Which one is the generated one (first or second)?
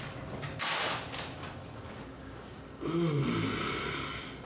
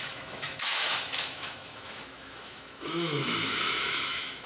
second